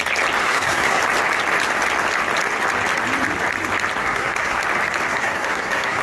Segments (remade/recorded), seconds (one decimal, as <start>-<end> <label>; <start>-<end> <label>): 0.0-0.4 recorded; 0.4-1.0 remade; 1.0-4.0 recorded; 4.0-4.6 remade; 4.6-5.1 recorded; 5.1-6.0 remade